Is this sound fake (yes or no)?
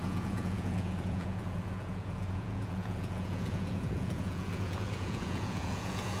yes